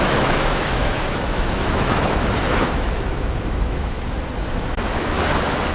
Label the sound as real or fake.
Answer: fake